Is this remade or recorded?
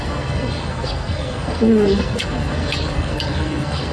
remade